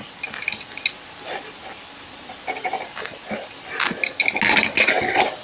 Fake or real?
real